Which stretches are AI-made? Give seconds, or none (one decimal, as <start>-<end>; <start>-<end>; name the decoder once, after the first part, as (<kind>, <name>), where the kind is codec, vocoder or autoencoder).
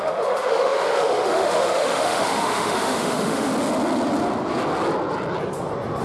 0.0-3.5 (autoencoder, DAC-VAE)